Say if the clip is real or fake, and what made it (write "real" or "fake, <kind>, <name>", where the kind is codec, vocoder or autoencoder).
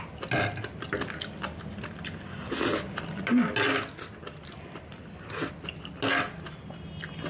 real